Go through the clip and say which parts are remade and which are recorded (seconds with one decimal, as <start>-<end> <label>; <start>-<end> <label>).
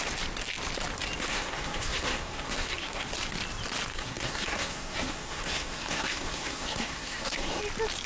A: 0.0-1.3 recorded; 1.3-3.1 remade; 3.1-3.9 recorded; 3.9-7.6 remade; 7.6-8.1 recorded